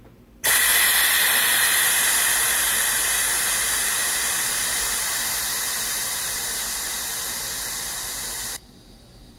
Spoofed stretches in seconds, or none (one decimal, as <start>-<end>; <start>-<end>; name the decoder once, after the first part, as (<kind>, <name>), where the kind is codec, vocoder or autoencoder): 0.0-0.7 (vocoder, BigVGAN v2); 1.2-9.4